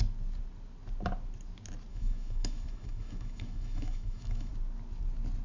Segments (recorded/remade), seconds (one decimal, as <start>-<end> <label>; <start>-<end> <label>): 0.0-1.9 recorded; 1.9-4.5 remade; 4.5-5.4 recorded